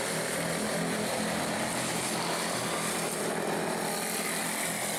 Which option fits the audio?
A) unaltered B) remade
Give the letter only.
A